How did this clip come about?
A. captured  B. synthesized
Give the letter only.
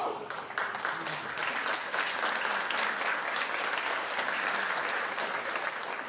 A